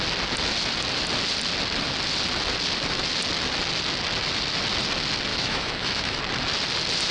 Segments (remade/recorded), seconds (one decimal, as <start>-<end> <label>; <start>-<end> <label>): 0.0-5.3 recorded; 5.3-6.2 remade; 6.2-7.1 recorded

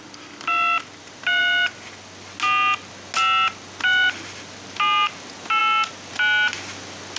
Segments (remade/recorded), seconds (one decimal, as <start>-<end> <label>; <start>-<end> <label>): 0.0-7.2 recorded

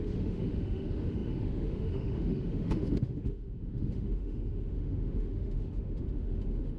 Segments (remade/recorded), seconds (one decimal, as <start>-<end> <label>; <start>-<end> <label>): 0.0-6.8 remade

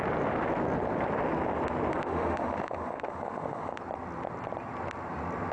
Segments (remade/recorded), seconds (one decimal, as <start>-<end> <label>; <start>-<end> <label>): 0.0-1.9 recorded; 1.9-3.8 remade; 3.8-5.5 recorded

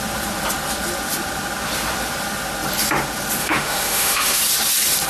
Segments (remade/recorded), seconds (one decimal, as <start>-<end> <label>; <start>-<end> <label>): 0.0-3.4 recorded; 3.4-4.4 remade; 4.4-5.1 recorded

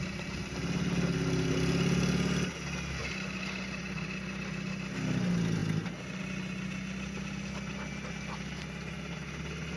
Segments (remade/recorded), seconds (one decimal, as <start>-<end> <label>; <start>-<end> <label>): 0.0-9.8 recorded

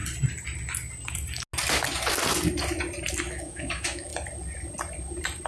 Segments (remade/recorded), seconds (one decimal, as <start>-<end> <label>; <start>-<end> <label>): 0.0-3.3 recorded; 3.3-4.1 remade; 4.1-5.5 recorded

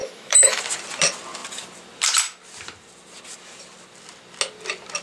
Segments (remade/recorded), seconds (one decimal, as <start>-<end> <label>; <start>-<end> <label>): 0.0-0.6 remade; 0.6-5.0 recorded